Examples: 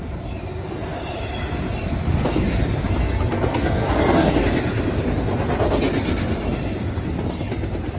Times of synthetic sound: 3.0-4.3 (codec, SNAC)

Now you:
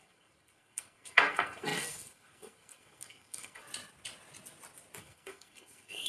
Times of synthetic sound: 0.0-3.7 (codec, SNAC); 5.0-6.1

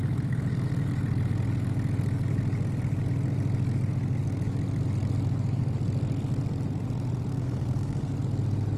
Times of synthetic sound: 7.3-8.1 (codec, SNAC)

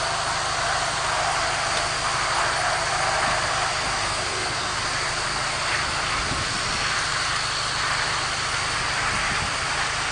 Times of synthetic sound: 4.0-4.8 (codec, SNAC)

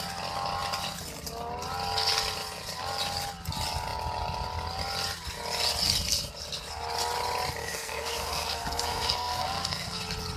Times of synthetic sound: 7.6-10.0 (codec, SNAC)

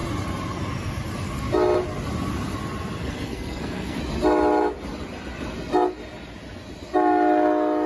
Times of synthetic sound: 3.0-4.0 (codec, SNAC)

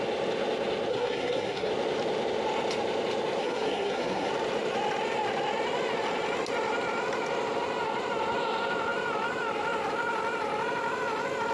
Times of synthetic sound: 0.9-1.7 (codec, SNAC); 3.4-4.3

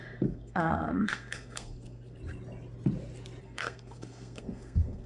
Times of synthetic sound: 0.0-2.2 (codec, SNAC); 3.4-5.1